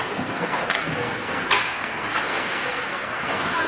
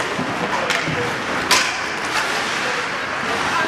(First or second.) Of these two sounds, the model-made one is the first